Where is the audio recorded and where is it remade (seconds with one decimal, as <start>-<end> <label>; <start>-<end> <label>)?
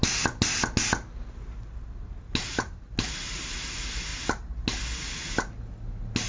0.0-6.3 recorded